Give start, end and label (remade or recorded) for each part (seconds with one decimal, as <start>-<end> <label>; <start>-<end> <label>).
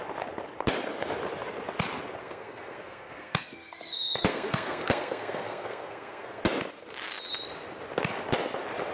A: 0.0-2.2 recorded; 2.2-6.4 remade; 6.4-8.9 recorded